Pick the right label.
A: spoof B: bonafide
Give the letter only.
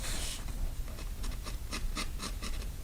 A